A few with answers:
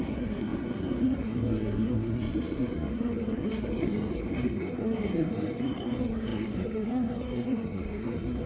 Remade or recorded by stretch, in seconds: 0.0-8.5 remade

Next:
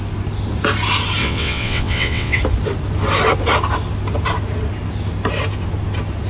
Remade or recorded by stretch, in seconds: 0.0-1.2 recorded; 1.2-2.4 remade; 2.4-6.3 recorded

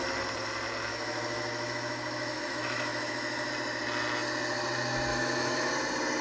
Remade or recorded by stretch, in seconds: 0.0-0.9 recorded; 0.9-3.5 remade; 3.5-5.1 recorded; 5.1-5.7 remade; 5.7-6.2 recorded

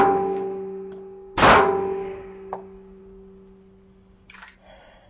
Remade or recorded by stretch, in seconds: 0.0-2.0 recorded; 2.0-3.0 remade; 3.0-5.1 recorded